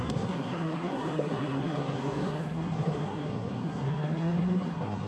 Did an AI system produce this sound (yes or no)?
yes